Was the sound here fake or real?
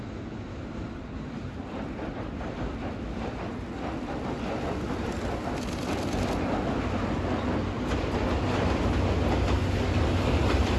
real